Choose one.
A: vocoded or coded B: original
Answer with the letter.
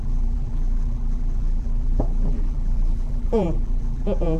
A